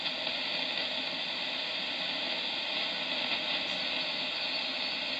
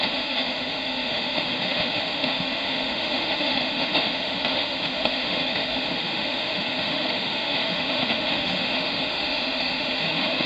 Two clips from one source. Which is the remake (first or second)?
second